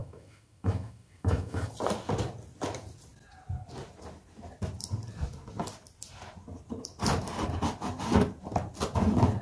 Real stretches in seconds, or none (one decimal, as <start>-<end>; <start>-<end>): 1.7-9.4